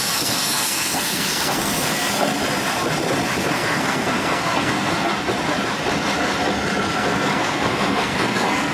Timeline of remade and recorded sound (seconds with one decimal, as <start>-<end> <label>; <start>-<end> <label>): 0.0-2.3 remade; 2.3-3.4 recorded; 3.4-5.1 remade; 5.1-6.8 recorded; 6.8-8.7 remade